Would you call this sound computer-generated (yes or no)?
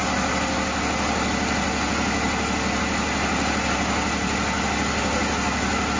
no